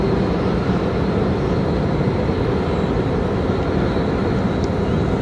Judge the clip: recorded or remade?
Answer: recorded